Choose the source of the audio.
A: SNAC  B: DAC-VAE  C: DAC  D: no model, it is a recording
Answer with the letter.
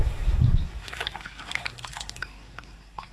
A